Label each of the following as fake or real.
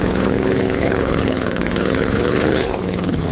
fake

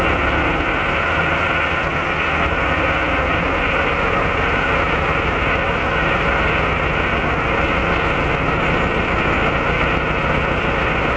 real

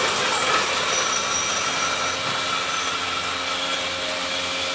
real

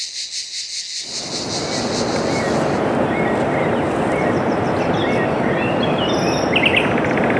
real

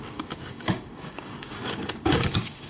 fake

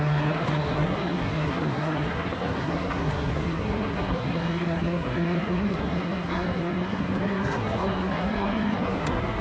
fake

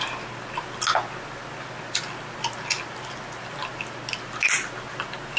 real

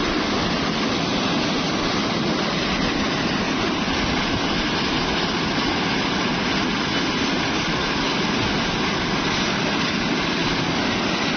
real